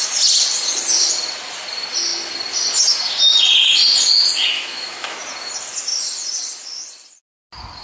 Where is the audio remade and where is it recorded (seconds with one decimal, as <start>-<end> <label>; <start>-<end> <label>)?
0.0-4.5 recorded; 4.5-5.2 remade; 5.2-7.8 recorded